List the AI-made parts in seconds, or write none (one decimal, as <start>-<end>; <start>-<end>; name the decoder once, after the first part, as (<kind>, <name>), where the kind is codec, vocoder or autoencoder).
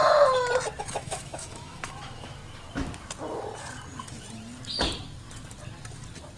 0.8-2.4 (autoencoder, DAC-VAE)